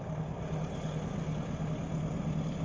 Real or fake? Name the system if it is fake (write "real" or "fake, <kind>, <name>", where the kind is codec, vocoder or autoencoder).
real